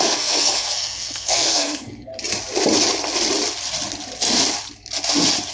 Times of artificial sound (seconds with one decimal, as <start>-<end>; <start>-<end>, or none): 0.0-2.1